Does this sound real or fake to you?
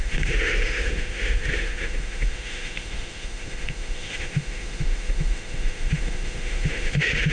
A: fake